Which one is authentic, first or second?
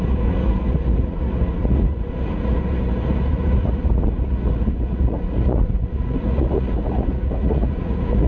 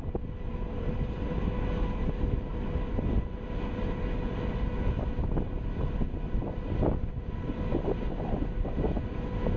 second